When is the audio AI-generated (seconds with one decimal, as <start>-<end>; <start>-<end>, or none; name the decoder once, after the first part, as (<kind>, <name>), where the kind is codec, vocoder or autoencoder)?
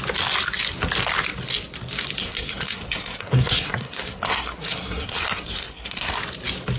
2.2-6.1 (codec, SNAC)